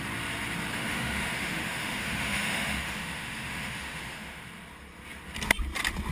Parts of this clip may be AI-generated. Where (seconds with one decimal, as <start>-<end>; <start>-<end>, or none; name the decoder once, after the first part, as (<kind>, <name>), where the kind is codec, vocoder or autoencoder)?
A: 0.7-4.4 (autoencoder, DAC-VAE)